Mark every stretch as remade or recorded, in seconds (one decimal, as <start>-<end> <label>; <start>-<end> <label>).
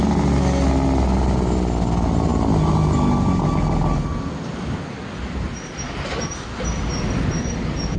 0.0-8.0 recorded